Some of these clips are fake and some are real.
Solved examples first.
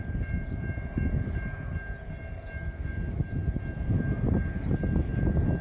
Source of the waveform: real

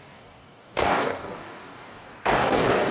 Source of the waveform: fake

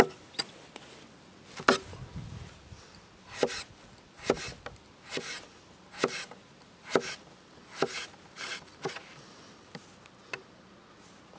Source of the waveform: real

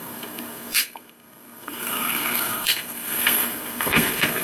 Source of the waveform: fake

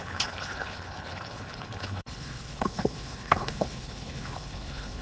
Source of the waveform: fake